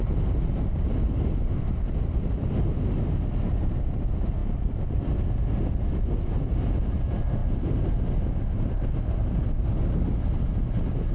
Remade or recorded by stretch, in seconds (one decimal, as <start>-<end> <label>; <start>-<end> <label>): 0.0-11.1 recorded